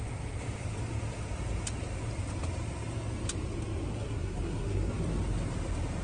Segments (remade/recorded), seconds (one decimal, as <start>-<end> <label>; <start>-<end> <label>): 0.0-3.9 recorded; 3.9-4.9 remade; 4.9-6.0 recorded